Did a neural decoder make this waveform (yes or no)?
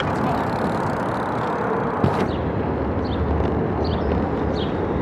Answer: no